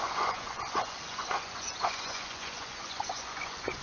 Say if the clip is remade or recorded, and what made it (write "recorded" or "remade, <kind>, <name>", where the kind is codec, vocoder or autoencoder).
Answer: remade, vocoder, Vocos